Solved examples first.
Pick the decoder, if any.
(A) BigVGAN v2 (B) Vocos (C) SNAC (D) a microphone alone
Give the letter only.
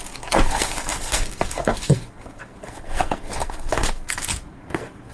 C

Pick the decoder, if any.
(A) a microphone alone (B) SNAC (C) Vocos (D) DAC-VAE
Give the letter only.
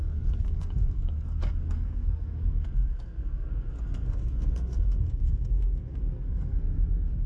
B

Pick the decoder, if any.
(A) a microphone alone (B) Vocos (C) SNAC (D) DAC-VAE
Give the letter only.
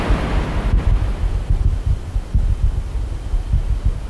A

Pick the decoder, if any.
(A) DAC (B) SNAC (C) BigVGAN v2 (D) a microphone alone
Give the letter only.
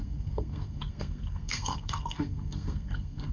B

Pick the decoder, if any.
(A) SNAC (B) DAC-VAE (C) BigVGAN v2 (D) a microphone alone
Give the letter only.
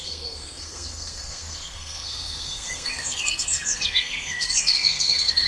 A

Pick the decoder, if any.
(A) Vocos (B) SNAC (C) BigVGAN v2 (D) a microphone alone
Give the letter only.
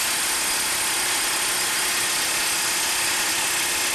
D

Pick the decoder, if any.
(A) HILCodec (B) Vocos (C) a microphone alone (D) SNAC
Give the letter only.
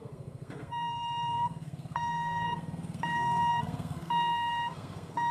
D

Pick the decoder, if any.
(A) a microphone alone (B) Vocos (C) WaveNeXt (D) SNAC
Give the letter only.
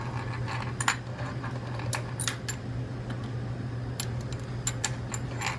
A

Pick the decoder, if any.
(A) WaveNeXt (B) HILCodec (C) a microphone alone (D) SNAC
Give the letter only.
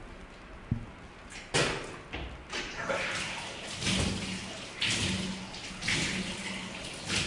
C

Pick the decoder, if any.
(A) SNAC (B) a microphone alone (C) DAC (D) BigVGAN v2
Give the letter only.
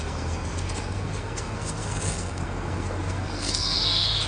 A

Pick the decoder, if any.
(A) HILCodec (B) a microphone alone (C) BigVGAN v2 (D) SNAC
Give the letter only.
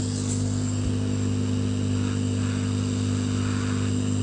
B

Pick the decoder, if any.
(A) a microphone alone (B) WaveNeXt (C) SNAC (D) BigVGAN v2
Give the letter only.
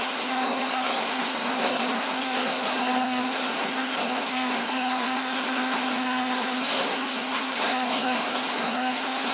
C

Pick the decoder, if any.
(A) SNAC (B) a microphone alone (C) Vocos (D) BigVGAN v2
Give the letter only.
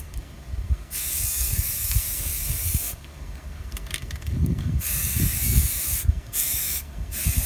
A